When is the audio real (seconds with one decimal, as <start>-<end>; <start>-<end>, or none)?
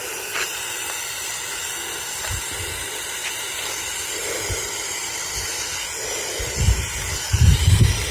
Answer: 0.0-8.1